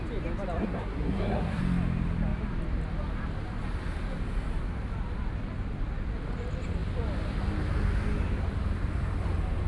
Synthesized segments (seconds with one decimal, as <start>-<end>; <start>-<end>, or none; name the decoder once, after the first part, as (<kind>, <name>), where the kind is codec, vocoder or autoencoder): 0.6-1.6 (codec, SNAC)